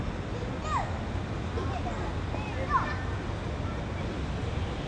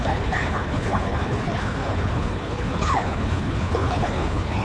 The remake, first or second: second